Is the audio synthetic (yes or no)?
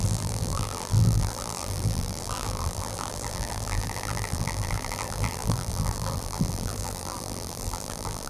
yes